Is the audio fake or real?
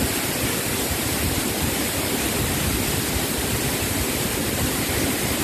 real